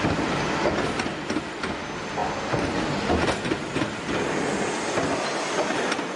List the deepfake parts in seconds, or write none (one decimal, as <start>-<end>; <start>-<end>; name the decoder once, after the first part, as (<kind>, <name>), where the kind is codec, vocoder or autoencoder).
none